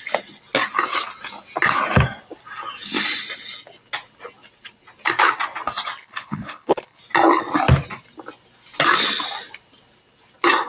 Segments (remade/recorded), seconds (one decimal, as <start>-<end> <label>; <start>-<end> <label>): 0.0-6.0 recorded; 6.0-7.0 remade; 7.0-10.7 recorded